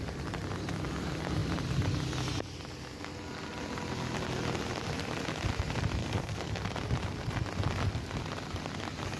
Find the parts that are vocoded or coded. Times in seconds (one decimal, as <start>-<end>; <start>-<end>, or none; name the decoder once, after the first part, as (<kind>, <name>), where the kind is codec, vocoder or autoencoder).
6.0-6.6 (codec, SNAC)